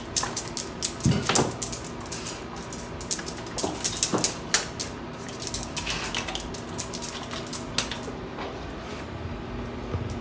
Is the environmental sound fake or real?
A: real